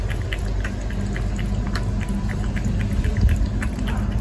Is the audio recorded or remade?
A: recorded